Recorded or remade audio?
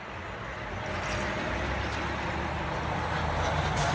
recorded